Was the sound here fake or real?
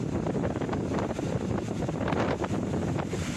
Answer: real